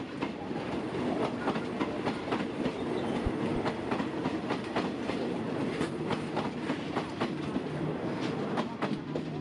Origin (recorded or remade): recorded